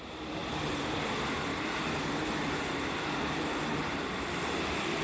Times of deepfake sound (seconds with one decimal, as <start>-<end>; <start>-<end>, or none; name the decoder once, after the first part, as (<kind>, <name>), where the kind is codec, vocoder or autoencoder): 0.0-5.0 (vocoder, BigVGAN v2)